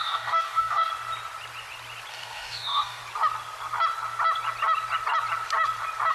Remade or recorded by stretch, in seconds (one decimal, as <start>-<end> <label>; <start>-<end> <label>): 0.0-0.9 remade; 0.9-2.1 recorded; 2.1-3.0 remade; 3.0-6.1 recorded